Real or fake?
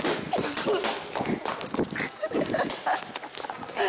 real